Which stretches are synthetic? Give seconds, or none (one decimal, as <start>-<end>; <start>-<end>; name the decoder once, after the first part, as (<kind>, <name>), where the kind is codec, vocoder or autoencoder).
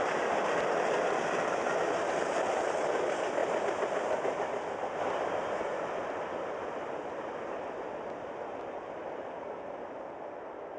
none